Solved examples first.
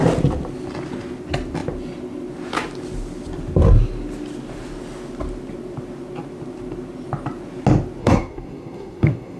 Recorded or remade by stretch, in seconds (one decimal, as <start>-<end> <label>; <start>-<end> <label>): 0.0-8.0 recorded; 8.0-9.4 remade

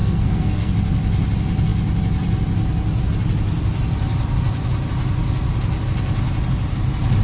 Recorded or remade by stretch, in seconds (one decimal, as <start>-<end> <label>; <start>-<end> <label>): 0.0-0.7 remade; 0.7-7.2 recorded

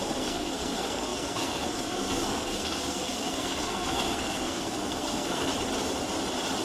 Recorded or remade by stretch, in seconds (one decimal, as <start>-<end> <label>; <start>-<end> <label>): 0.0-5.5 remade; 5.5-6.6 recorded

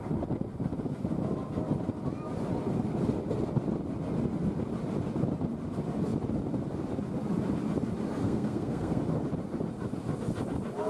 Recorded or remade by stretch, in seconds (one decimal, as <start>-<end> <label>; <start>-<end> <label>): 0.0-8.2 recorded; 8.2-9.0 remade; 9.0-10.9 recorded

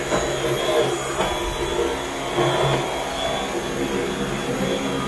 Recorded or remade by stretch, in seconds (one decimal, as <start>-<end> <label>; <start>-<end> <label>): 0.0-5.1 recorded

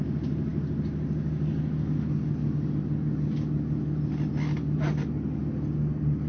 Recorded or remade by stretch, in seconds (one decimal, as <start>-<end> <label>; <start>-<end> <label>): 0.0-6.3 recorded

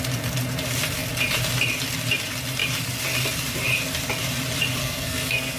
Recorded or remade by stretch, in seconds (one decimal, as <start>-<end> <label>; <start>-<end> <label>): 0.0-4.8 recorded; 4.8-5.6 remade

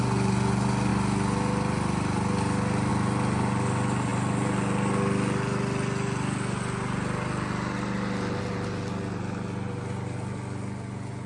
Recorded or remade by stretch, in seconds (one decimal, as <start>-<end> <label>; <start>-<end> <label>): 0.0-11.3 recorded